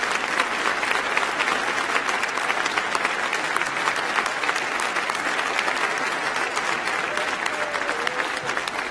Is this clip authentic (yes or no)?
yes